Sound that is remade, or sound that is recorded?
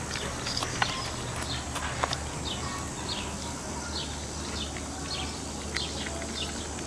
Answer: recorded